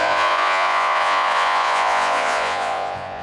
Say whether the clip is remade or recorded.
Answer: remade